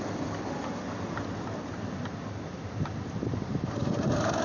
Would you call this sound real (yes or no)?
yes